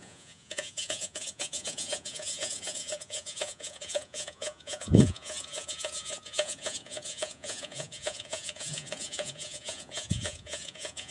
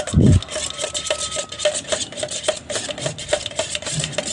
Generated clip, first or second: first